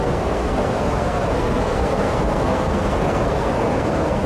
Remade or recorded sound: remade